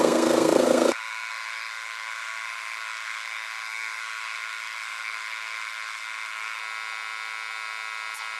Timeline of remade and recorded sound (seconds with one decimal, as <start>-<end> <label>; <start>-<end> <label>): 0.0-6.6 remade; 6.6-8.4 recorded